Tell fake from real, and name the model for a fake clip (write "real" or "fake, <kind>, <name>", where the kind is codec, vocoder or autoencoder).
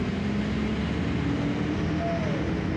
real